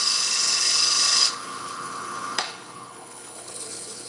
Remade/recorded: remade